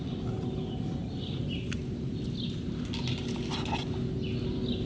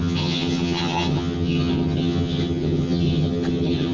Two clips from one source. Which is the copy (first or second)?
second